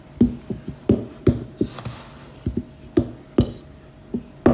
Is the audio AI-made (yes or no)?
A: no